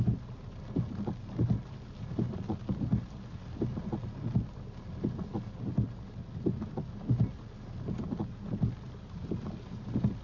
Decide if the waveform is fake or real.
real